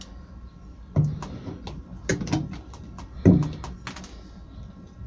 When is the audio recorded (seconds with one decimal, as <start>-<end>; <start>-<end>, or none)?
0.0-5.1